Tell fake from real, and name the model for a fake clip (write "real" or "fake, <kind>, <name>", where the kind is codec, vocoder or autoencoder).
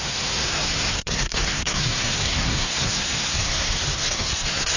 fake, codec, SNAC